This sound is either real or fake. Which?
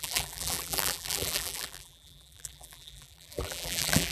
fake